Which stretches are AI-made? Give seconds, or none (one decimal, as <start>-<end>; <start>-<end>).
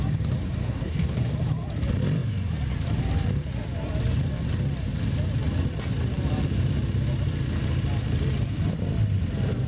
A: 0.6-1.3